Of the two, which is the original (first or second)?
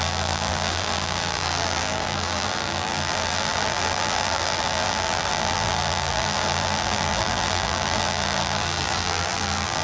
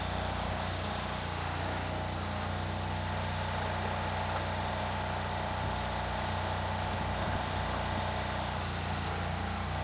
second